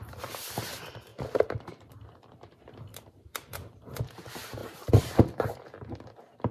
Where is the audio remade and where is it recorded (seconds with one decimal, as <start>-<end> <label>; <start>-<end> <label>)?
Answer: 0.0-1.1 recorded; 1.1-1.9 remade; 1.9-2.9 recorded; 2.9-4.0 remade; 4.0-4.6 recorded; 4.6-5.3 remade; 5.3-6.5 recorded